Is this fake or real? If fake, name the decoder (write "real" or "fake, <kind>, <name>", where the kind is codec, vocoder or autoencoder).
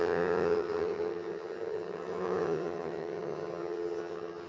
fake, vocoder, HiFi-GAN